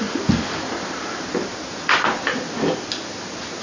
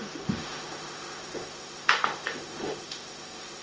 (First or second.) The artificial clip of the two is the second